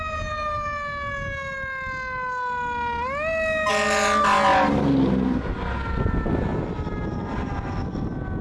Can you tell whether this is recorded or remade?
recorded